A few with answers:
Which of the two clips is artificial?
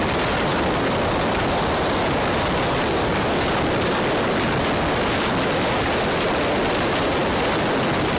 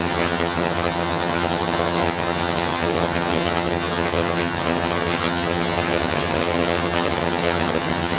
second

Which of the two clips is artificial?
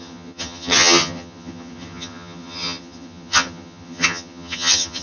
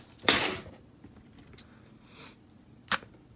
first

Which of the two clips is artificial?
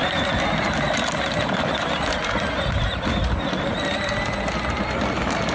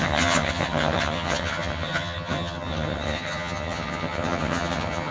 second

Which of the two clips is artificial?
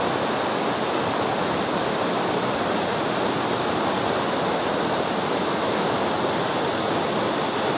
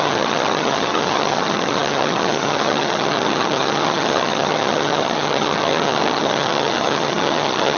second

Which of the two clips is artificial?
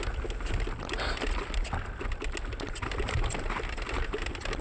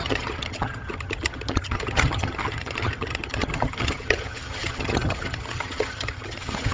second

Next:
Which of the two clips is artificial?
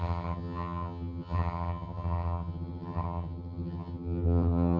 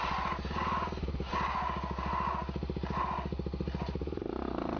first